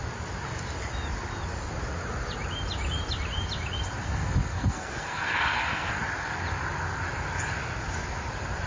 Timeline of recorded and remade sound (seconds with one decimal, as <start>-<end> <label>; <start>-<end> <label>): 0.0-4.0 recorded; 4.0-6.0 remade; 6.0-8.7 recorded